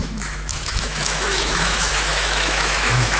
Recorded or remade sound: remade